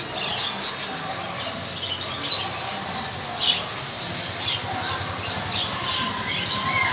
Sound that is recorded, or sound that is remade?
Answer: recorded